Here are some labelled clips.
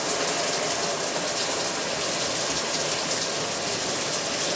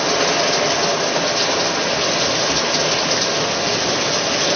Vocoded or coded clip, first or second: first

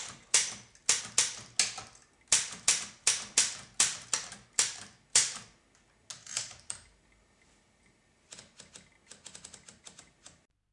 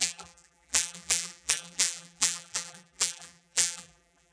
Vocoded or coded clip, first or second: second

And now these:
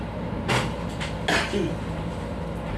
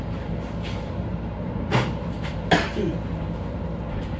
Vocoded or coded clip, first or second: second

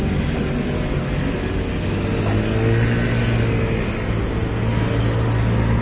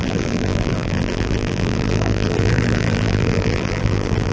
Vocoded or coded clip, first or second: second